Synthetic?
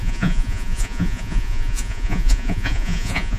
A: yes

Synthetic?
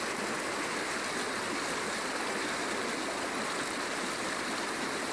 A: no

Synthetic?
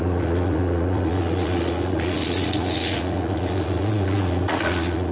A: yes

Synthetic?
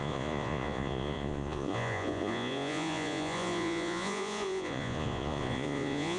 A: yes